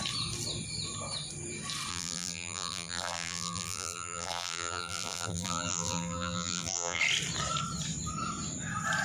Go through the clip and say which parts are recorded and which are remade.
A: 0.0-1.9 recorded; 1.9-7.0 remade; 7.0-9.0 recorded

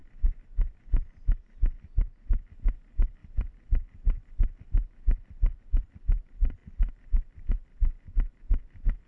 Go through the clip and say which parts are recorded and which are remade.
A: 0.0-2.3 remade; 2.3-3.2 recorded; 3.2-5.6 remade; 5.6-9.1 recorded